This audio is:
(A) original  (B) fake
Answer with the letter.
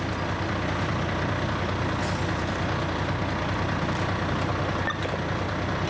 A